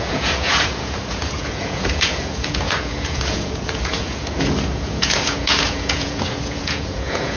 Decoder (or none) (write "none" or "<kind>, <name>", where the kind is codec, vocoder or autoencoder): vocoder, Vocos